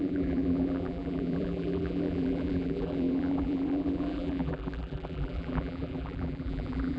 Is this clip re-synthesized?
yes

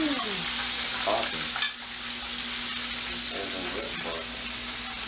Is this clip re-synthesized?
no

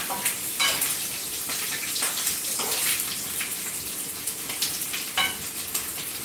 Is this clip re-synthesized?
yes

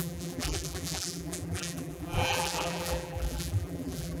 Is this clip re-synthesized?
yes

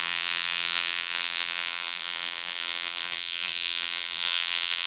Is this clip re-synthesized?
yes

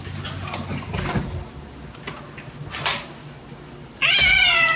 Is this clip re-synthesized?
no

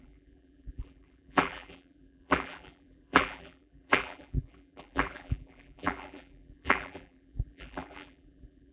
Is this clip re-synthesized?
yes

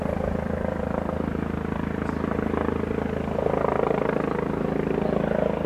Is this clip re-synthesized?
no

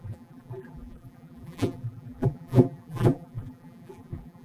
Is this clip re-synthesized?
yes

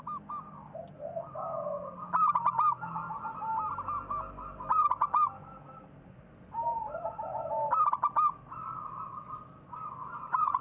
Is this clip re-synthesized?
no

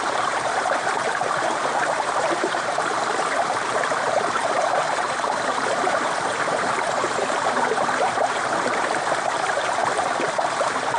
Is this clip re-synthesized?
yes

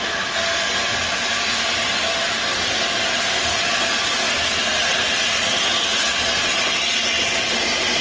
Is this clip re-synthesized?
no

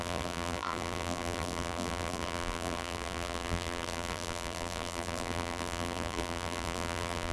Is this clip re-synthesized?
yes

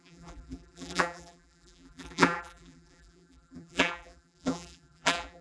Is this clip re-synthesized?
yes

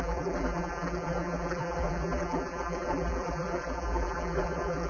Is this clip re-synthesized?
yes